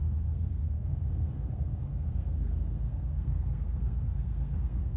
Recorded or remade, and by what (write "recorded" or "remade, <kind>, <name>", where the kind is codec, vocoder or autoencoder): remade, codec, SNAC